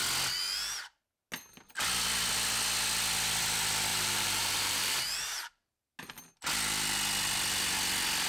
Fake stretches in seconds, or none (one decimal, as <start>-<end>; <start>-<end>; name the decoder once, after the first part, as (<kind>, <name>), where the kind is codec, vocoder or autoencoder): 3.9-6.0 (vocoder, BigVGAN v2)